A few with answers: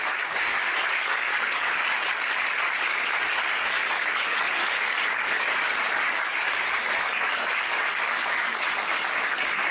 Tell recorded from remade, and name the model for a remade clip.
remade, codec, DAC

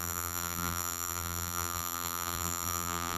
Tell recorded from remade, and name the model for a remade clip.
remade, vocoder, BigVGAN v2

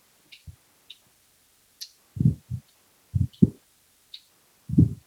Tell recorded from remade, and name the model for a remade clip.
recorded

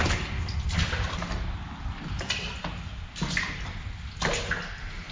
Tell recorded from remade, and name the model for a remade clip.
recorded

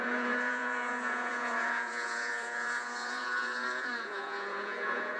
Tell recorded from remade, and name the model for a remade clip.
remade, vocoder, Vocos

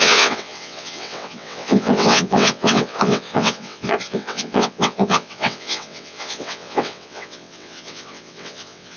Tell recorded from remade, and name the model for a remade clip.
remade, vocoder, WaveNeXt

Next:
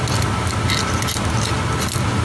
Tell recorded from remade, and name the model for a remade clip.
recorded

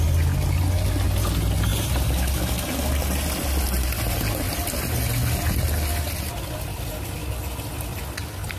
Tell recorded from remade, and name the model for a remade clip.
recorded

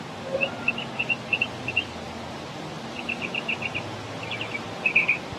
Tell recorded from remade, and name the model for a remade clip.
recorded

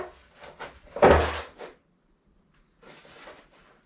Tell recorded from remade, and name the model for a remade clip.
recorded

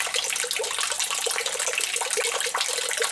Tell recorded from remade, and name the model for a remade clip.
recorded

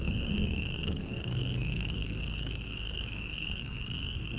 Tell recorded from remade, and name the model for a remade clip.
remade, codec, SNAC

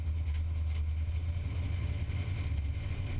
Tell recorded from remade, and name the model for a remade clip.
recorded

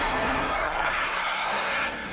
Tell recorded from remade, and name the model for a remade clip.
remade, codec, SNAC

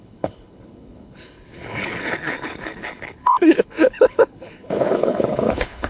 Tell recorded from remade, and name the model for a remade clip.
remade, codec, HILCodec